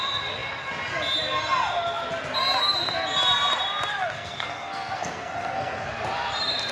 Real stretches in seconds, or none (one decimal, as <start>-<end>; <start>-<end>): 0.0-3.9; 5.9-6.7